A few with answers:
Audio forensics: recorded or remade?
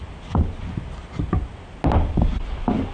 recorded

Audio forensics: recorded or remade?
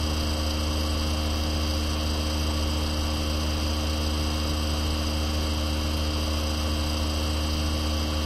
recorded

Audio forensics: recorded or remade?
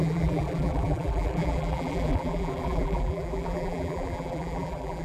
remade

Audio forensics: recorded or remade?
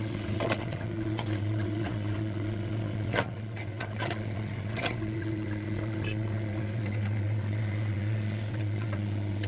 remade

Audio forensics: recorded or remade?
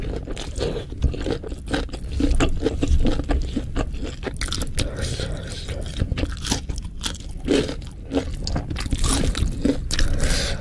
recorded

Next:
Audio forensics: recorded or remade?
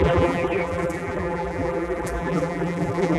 remade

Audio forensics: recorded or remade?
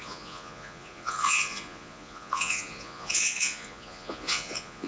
remade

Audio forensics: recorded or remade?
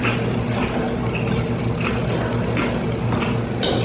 recorded